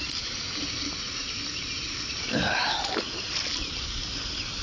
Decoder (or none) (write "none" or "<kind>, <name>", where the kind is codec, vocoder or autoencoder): vocoder, BigVGAN v2